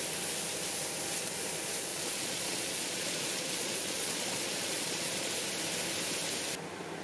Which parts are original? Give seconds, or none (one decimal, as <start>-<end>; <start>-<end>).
0.0-1.9; 5.3-7.0